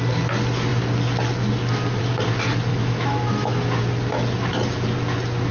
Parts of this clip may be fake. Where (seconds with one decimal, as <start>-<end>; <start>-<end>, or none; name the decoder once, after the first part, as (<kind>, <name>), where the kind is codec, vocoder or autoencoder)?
2.7-3.8 (autoencoder, DAC-VAE)